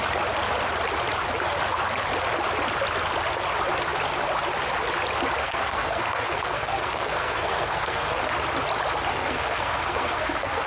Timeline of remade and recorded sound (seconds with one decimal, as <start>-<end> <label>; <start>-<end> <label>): 0.0-5.4 recorded; 5.4-8.3 remade; 8.3-9.1 recorded; 9.1-10.7 remade